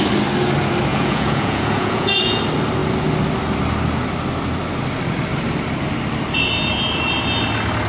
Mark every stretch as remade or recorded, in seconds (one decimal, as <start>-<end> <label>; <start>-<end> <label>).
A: 0.0-0.9 recorded; 0.9-2.4 remade; 2.4-7.9 recorded